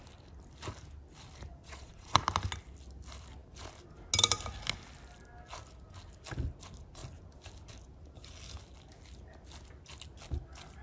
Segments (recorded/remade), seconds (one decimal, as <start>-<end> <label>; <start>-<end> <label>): 0.0-1.6 recorded; 1.6-2.2 remade; 2.2-10.8 recorded